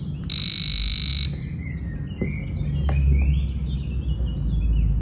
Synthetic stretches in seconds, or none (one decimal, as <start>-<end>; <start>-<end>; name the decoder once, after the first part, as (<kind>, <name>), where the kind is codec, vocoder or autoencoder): none